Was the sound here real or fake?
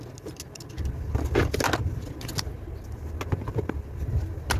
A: real